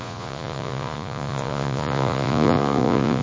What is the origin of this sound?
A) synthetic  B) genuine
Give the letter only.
A